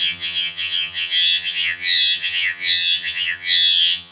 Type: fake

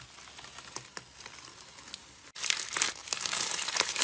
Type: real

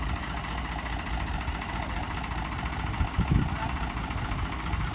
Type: real